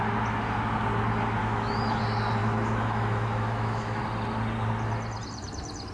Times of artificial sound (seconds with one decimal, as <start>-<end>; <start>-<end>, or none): 1.4-2.0; 2.4-4.0